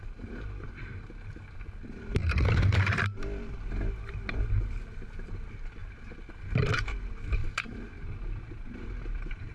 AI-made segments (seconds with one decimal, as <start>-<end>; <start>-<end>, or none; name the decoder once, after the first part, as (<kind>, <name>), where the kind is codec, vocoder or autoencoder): 2.2-3.6 (vocoder, BigVGAN v2); 7.4-8.4